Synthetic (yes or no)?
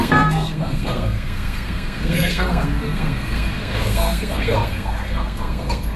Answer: yes